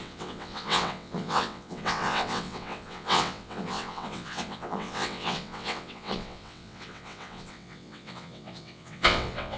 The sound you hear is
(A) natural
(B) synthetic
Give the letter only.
B